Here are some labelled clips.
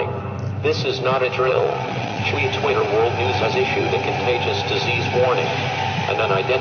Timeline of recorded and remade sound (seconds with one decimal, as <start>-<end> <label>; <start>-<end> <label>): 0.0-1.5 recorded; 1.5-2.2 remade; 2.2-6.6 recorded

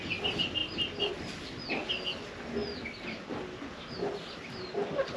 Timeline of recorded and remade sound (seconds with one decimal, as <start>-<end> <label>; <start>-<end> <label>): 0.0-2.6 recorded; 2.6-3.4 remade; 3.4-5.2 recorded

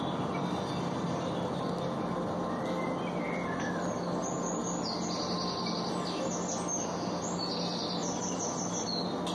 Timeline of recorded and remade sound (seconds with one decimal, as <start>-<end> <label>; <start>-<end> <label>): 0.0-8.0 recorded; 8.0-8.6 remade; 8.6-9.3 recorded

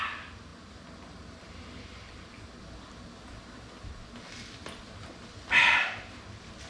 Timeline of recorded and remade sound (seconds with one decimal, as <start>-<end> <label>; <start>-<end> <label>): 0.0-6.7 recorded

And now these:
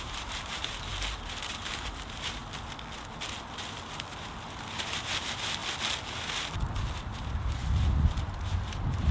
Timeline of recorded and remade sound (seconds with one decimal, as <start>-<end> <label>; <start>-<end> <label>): 0.0-0.9 remade; 0.9-1.5 recorded; 1.5-2.4 remade; 2.4-4.8 recorded; 4.8-5.6 remade; 5.6-7.4 recorded; 7.4-9.1 remade

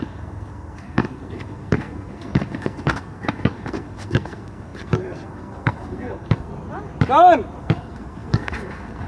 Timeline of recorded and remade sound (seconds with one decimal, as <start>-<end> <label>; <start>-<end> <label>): 0.0-6.5 remade; 6.5-7.6 recorded; 7.6-9.1 remade